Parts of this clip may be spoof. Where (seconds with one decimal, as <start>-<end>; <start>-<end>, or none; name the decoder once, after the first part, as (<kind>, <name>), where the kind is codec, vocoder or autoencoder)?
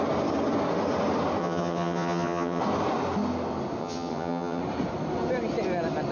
1.4-2.6 (vocoder, HiFi-GAN); 3.8-4.6